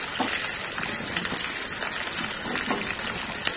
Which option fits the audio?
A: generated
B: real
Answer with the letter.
B